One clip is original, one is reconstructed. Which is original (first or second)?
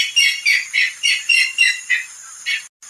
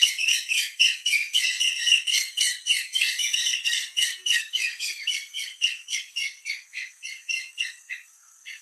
first